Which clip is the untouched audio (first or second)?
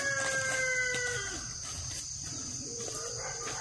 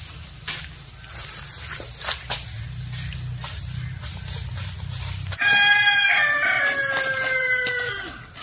first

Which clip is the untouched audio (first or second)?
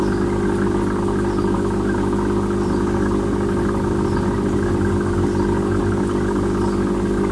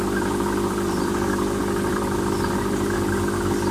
first